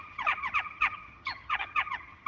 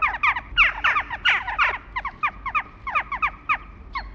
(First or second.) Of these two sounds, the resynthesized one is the first